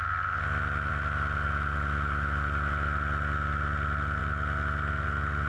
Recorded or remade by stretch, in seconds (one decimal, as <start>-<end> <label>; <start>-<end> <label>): 0.0-5.5 recorded